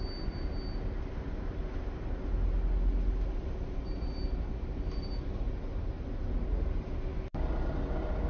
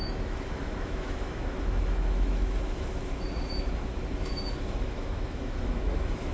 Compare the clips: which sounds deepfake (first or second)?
second